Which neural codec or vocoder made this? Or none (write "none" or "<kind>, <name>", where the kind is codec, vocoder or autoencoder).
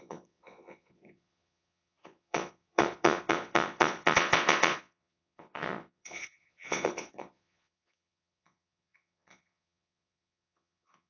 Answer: vocoder, Vocos